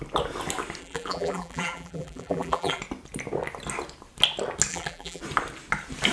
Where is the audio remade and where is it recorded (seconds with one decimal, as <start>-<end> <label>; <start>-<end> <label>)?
0.0-0.8 recorded; 0.8-2.8 remade; 2.8-4.7 recorded; 4.7-5.2 remade; 5.2-6.1 recorded